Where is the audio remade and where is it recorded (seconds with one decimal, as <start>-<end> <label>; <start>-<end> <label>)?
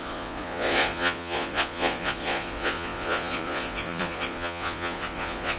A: 0.0-5.6 remade